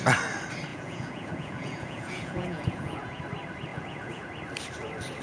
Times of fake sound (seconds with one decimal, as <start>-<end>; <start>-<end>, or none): 0.7-3.2; 3.7-4.2